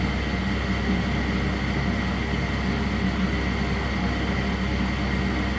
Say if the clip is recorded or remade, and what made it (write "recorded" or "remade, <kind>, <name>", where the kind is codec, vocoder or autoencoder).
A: recorded